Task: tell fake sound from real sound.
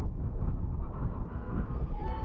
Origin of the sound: fake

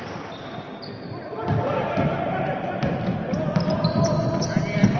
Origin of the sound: real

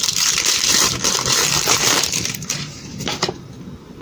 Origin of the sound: fake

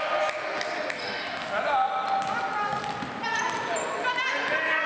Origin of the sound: real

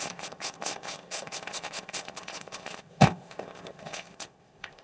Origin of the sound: fake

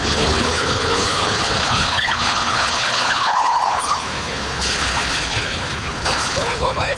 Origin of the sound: fake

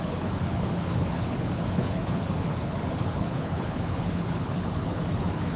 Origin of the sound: fake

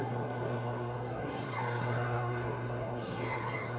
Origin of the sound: fake